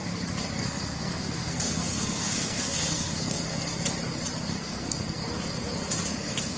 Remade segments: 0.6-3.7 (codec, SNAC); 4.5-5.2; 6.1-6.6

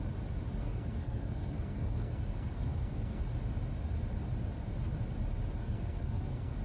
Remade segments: 0.6-3.2 (codec, SNAC); 5.6-6.6

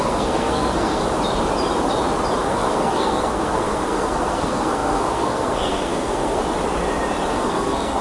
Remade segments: 0.0-1.0 (codec, SNAC); 2.4-6.4; 7.3-8.0